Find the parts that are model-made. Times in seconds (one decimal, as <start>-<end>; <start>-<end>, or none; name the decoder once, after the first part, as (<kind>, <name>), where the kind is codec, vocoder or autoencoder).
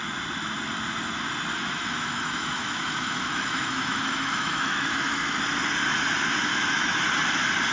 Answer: 1.5-5.4 (autoencoder, DAC-VAE); 6.5-7.0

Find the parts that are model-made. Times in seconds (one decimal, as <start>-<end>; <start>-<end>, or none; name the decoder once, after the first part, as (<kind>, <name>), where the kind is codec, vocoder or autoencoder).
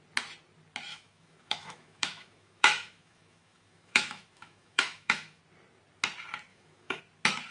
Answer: 0.9-5.4 (autoencoder, DAC-VAE); 6.5-7.0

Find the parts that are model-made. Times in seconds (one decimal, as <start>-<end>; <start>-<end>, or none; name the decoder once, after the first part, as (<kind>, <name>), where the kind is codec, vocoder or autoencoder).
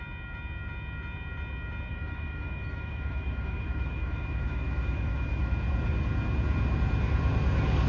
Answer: 1.9-5.5 (autoencoder, DAC-VAE)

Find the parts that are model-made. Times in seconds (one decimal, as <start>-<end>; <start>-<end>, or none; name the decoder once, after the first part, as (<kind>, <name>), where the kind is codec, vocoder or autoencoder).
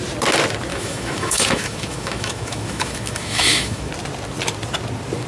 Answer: 0.7-3.9 (autoencoder, DAC-VAE)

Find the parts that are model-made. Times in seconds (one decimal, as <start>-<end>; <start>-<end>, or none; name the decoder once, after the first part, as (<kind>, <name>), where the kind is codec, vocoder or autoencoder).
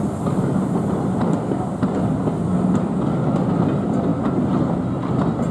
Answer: none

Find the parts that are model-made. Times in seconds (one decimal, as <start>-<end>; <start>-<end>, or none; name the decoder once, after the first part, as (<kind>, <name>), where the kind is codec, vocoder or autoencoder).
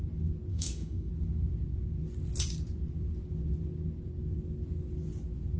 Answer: 0.5-1.1 (autoencoder, DAC-VAE)